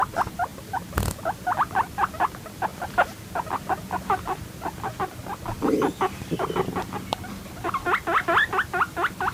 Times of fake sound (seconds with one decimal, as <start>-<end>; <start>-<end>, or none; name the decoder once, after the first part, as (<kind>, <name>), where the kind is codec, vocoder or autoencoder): none